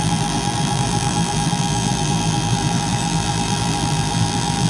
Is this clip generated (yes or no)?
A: yes